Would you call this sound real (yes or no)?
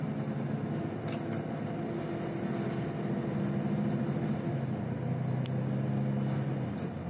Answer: yes